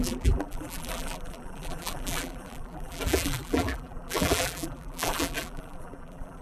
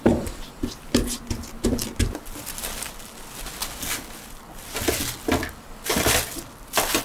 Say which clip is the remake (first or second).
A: first